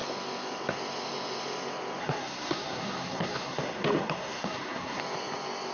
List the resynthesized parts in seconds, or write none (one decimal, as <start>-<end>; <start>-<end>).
2.0-5.0